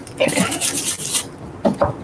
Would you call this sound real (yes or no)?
yes